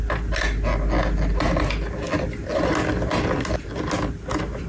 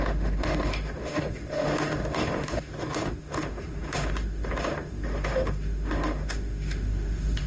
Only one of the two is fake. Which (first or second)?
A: second